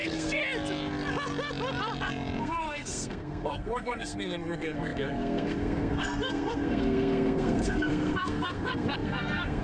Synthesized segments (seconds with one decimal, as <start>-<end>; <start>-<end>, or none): 0.0-0.4; 2.4-9.6